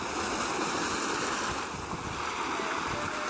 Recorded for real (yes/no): yes